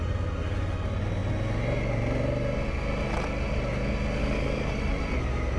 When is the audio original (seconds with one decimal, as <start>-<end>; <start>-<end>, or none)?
0.0-5.6